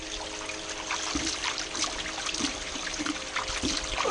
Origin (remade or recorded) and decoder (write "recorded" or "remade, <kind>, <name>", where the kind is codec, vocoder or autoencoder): recorded